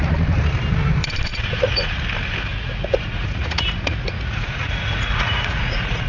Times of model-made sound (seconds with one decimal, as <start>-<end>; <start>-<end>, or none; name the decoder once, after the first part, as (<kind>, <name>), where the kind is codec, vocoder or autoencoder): 1.3-2.0 (vocoder, Vocos); 2.5-6.1